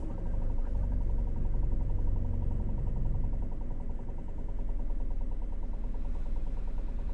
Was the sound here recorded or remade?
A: recorded